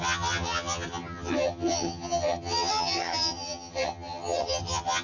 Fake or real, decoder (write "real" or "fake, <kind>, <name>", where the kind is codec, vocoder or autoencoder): fake, vocoder, HiFi-GAN